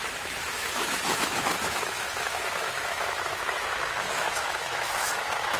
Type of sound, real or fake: fake